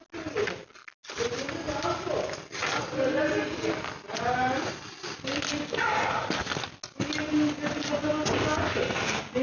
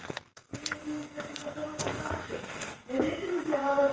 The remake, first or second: second